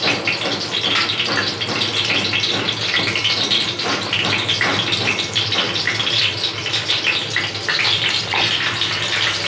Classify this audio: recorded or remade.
recorded